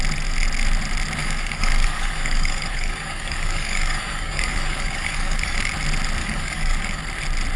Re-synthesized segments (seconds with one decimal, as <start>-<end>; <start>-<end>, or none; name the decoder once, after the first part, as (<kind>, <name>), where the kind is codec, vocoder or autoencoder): 1.2-5.7 (codec, DAC); 6.2-7.0